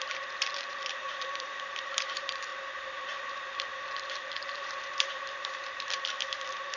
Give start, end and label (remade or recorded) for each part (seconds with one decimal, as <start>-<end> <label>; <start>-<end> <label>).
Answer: 0.0-2.5 remade; 2.5-3.0 recorded; 3.0-3.7 remade; 3.7-4.3 recorded; 4.3-6.8 remade

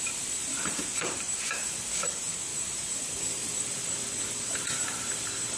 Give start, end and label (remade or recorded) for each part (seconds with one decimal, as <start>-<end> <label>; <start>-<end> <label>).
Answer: 0.0-0.4 recorded; 0.4-1.1 remade; 1.1-2.5 recorded; 2.5-5.6 remade

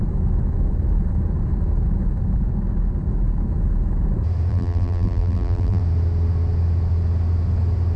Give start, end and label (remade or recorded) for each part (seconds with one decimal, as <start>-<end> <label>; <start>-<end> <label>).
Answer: 0.0-4.5 recorded; 4.5-5.8 remade; 5.8-8.0 recorded